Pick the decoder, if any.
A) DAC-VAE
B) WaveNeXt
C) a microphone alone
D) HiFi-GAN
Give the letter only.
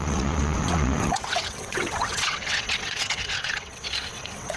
B